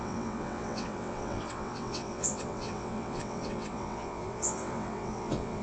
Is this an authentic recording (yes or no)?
no